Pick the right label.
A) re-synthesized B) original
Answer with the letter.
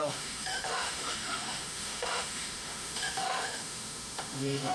A